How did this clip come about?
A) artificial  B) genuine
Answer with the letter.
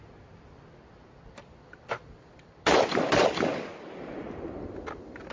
B